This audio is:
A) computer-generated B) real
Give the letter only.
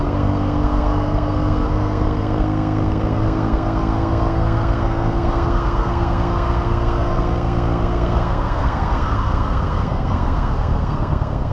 A